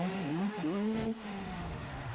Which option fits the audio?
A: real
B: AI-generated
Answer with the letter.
B